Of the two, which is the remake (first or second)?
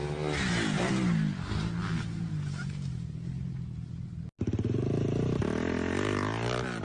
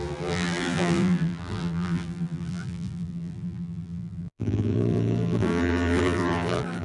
second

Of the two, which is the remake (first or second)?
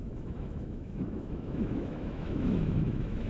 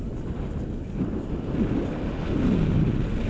first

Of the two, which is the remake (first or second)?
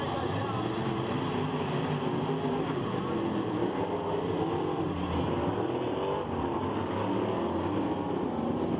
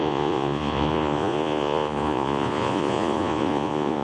second